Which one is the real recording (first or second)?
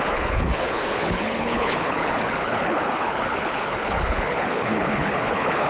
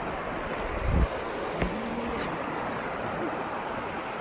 second